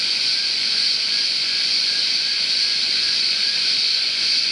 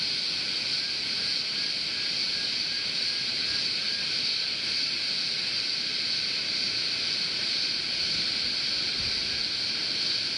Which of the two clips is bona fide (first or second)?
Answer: second